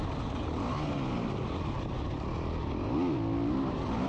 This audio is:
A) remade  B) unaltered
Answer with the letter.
B